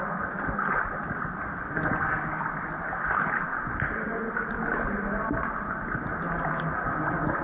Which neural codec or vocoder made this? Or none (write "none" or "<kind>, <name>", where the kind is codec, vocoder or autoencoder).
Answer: none